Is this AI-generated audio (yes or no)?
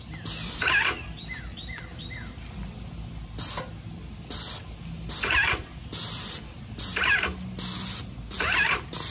no